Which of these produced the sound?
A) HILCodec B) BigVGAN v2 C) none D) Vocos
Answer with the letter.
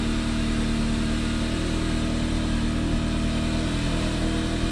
C